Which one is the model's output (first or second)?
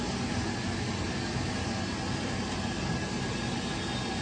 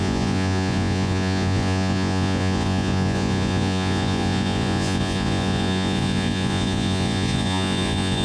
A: second